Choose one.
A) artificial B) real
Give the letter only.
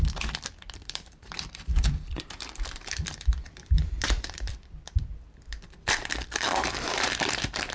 A